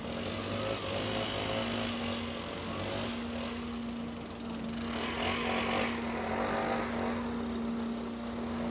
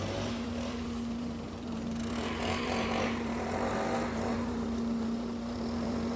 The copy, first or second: second